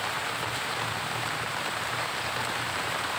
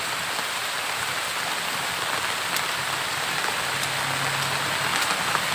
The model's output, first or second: first